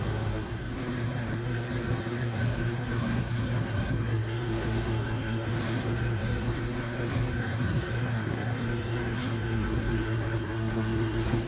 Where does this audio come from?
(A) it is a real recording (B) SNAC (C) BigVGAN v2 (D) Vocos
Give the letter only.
B